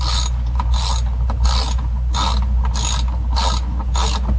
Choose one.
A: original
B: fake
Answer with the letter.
A